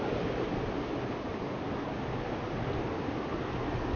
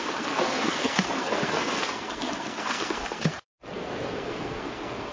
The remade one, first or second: second